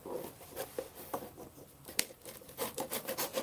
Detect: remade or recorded remade